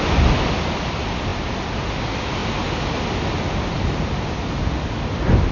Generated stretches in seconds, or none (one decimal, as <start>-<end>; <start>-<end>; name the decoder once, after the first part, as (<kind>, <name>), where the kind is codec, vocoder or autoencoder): none